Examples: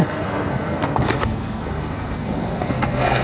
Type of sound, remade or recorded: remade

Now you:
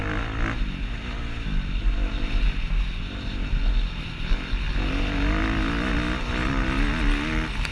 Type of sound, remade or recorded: recorded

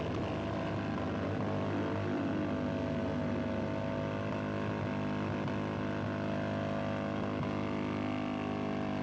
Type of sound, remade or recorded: recorded